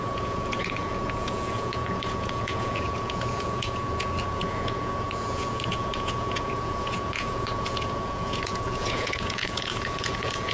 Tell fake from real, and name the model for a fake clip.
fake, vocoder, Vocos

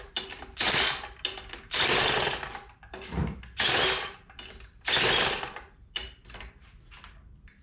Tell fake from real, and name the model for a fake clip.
real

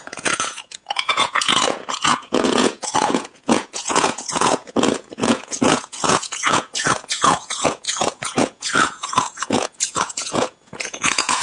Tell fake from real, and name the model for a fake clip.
fake, vocoder, Vocos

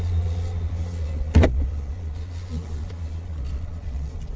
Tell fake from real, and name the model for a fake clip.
fake, vocoder, Vocos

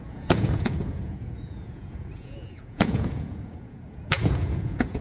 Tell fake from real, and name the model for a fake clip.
fake, vocoder, Vocos